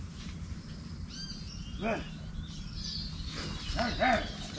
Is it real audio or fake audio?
real